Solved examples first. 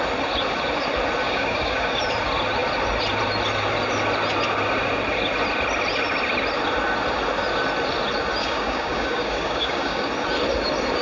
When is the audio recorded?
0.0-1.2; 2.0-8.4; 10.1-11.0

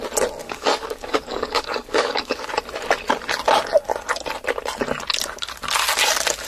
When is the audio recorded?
0.0-0.4; 2.5-6.5